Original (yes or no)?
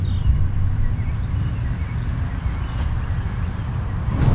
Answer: yes